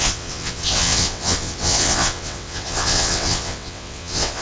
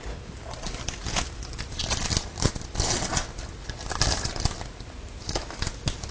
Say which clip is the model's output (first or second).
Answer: first